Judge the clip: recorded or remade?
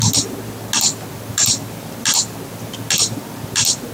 recorded